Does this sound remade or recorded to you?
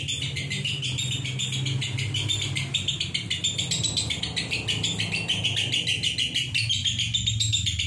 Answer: recorded